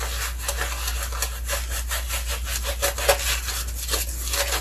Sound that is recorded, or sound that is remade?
recorded